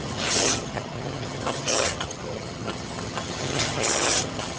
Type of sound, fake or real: fake